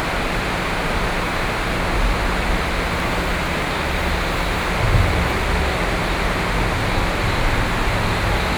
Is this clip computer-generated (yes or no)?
no